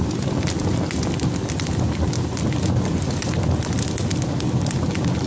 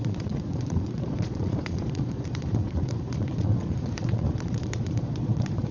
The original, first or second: first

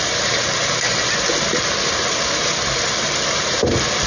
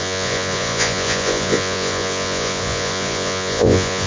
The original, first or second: first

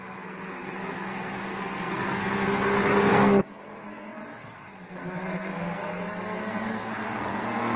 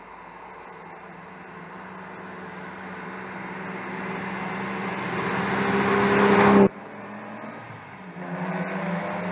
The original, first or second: second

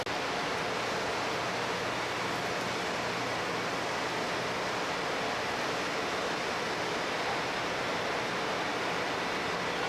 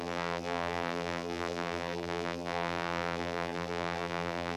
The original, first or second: first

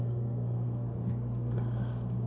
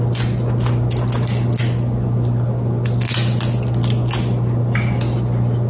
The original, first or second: second